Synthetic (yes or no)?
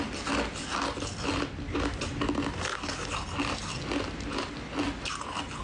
no